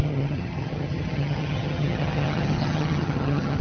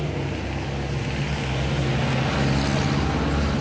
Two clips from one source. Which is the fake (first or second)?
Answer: first